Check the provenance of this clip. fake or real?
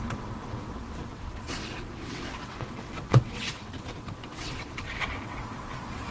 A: fake